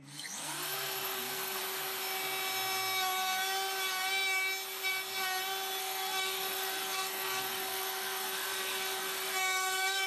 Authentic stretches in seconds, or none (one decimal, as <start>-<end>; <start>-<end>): 1.6-5.8